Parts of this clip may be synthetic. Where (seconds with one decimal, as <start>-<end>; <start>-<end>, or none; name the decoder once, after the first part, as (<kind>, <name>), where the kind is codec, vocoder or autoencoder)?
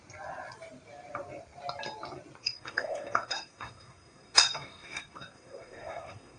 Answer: 2.4-6.4 (codec, SNAC)